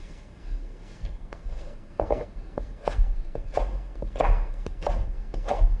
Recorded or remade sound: remade